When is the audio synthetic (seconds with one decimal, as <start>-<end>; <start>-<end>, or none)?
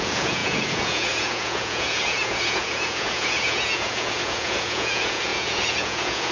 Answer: 0.0-6.3